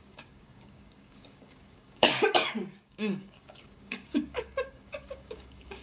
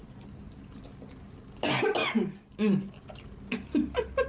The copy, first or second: first